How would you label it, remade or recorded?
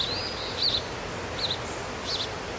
recorded